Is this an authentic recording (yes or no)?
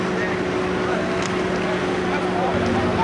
yes